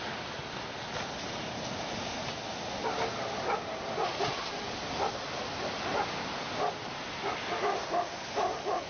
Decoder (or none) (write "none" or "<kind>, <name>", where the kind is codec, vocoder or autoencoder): none